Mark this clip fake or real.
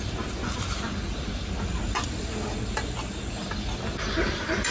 real